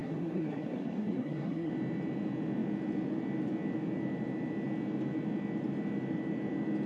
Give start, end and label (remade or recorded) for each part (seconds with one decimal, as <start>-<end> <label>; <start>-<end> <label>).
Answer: 0.0-1.7 remade; 1.7-6.9 recorded